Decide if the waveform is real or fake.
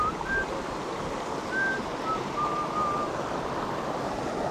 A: real